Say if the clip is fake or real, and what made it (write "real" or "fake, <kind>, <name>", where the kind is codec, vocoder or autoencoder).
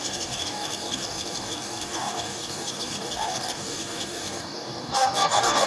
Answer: fake, codec, DAC